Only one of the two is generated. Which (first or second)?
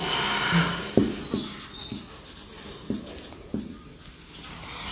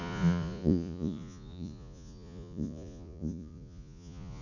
second